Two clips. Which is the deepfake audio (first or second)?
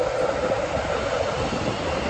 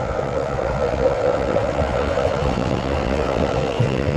second